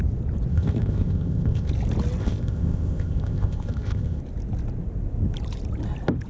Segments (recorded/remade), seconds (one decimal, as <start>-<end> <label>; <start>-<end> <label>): 0.0-0.5 recorded; 0.5-1.7 remade; 1.7-2.2 recorded; 2.2-4.2 remade; 4.2-6.3 recorded